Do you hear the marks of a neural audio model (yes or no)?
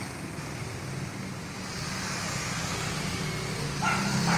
no